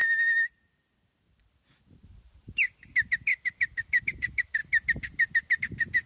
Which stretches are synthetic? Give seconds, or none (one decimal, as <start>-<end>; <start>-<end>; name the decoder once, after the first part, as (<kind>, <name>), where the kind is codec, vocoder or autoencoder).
none